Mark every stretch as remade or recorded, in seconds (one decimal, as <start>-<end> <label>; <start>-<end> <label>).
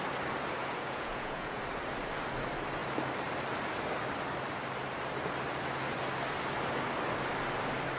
0.0-0.6 recorded; 0.6-1.6 remade; 1.6-8.0 recorded